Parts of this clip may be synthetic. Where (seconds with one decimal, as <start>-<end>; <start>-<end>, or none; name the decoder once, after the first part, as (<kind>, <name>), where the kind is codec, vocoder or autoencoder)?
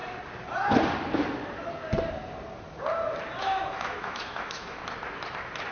3.4-4.8 (autoencoder, DAC-VAE)